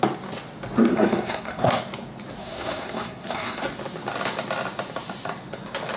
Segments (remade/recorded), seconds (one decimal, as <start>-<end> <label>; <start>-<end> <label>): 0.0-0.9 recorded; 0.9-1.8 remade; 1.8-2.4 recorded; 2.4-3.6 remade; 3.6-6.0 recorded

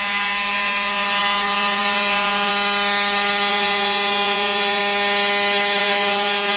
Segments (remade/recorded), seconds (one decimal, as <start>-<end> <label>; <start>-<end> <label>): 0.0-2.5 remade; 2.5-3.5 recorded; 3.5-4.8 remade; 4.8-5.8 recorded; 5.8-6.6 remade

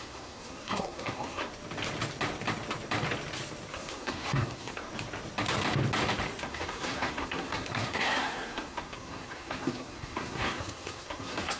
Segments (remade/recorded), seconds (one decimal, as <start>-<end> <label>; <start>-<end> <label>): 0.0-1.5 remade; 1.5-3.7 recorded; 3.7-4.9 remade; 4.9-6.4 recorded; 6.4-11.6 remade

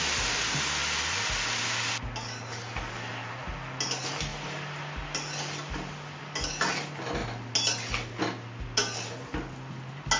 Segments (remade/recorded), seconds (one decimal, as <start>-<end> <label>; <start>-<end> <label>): 0.0-4.3 recorded; 4.3-6.2 remade; 6.2-10.2 recorded

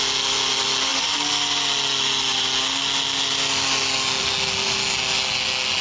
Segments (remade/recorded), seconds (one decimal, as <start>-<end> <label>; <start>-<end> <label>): 0.0-5.8 recorded

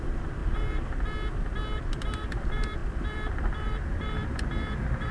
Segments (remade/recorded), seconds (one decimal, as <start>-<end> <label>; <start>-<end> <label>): 0.0-0.4 remade; 0.4-2.1 recorded; 2.1-5.1 remade

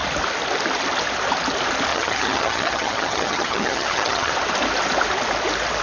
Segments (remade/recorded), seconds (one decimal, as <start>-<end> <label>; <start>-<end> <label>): 0.0-1.9 recorded; 1.9-4.3 remade; 4.3-5.8 recorded